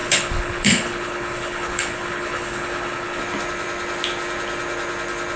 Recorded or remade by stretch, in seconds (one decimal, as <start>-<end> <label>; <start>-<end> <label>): 0.0-3.2 remade; 3.2-5.4 recorded